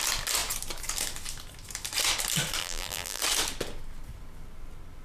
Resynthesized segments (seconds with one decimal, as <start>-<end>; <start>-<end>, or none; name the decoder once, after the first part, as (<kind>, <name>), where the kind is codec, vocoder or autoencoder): 2.6-3.2 (vocoder, BigVGAN v2)